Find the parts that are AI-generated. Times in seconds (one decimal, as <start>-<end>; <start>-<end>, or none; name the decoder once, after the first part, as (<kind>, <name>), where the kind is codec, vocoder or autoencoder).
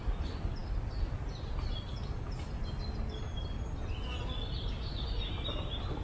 none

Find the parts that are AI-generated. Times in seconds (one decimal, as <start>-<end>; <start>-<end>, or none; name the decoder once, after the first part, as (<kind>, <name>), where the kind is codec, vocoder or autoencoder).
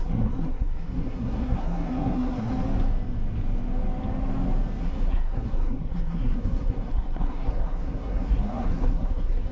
0.0-2.5 (codec, SNAC); 4.8-9.5